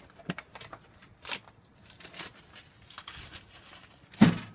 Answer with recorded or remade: recorded